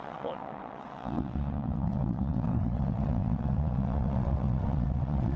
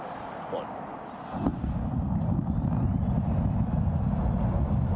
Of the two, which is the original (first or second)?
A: second